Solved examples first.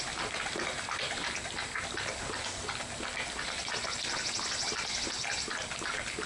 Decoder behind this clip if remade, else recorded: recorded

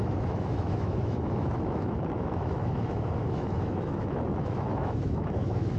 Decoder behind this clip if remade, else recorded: remade, autoencoder, DAC-VAE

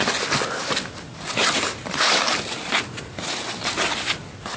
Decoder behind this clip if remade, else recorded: recorded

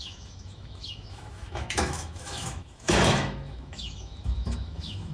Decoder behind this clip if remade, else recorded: remade, autoencoder, DAC-VAE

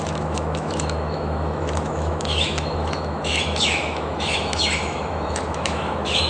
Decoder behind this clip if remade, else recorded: remade, autoencoder, DAC-VAE